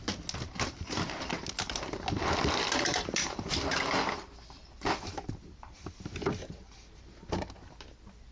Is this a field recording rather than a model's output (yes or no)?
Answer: yes